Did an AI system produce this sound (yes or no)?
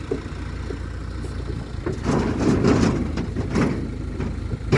no